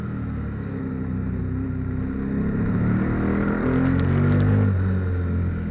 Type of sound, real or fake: real